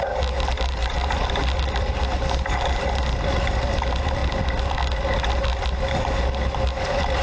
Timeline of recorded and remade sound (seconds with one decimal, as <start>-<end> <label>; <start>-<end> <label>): 0.0-7.2 recorded